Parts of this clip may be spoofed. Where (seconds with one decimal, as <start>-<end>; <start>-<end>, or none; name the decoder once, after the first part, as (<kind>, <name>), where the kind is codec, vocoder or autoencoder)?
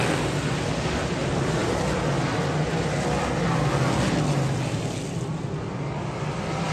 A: none